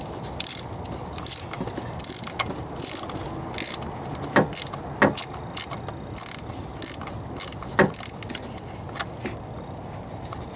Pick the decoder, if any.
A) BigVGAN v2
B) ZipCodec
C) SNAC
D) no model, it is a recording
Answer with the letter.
D